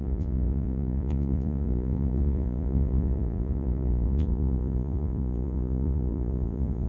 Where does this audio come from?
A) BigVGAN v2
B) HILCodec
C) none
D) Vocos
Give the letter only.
D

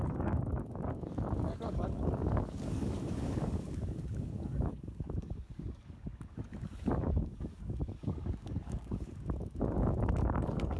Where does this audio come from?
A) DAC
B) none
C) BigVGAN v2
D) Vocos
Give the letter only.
A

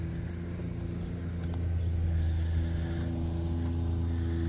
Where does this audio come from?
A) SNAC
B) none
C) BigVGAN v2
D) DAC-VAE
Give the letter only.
B